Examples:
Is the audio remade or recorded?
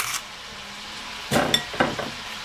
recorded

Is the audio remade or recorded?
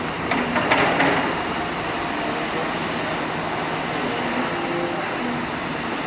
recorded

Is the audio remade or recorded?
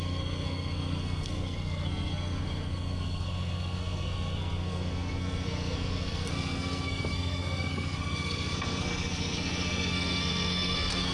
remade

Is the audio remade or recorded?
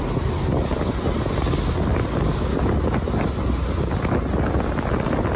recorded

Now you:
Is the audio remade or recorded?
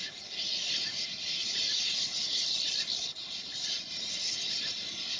recorded